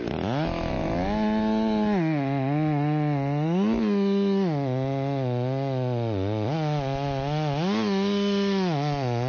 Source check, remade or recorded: recorded